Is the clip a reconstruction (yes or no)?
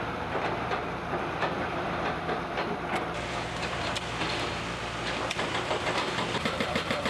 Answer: yes